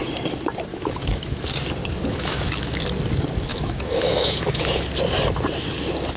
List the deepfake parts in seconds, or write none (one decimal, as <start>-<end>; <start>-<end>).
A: 0.7-1.5; 2.1-2.8; 3.5-4.8